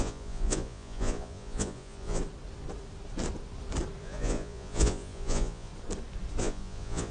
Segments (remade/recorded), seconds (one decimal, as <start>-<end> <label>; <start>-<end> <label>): 0.0-2.2 remade; 2.2-4.0 recorded; 4.0-5.7 remade; 5.7-6.4 recorded; 6.4-7.1 remade